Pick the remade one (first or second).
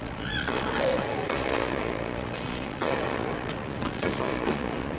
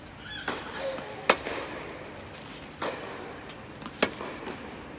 first